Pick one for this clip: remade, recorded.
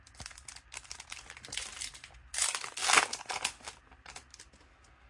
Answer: recorded